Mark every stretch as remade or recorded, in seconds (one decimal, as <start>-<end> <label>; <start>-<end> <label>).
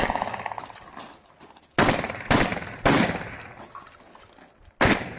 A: 0.0-5.2 recorded